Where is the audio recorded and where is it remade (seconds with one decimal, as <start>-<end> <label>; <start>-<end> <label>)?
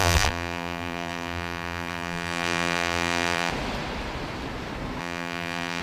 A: 0.0-3.5 remade; 3.5-5.0 recorded; 5.0-5.8 remade